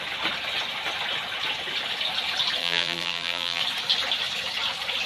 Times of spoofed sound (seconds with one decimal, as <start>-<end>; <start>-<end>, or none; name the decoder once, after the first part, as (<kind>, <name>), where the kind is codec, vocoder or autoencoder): 2.6-3.6 (vocoder, BigVGAN v2)

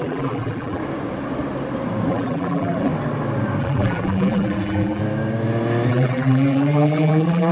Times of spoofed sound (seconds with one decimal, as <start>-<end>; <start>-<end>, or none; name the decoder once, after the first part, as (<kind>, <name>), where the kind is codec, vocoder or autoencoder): 0.0-0.8 (vocoder, BigVGAN v2); 2.1-2.9; 3.6-5.0; 5.9-7.5

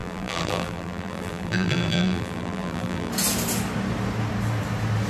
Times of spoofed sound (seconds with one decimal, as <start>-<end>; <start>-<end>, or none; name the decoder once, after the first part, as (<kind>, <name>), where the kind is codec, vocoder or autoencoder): 0.0-3.1 (vocoder, BigVGAN v2)

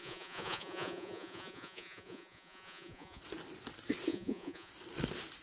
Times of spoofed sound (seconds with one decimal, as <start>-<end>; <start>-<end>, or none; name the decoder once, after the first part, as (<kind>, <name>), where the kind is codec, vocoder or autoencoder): 0.0-3.2 (vocoder, Vocos); 4.1-4.7